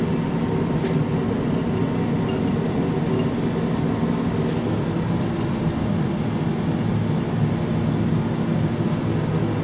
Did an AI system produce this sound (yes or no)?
no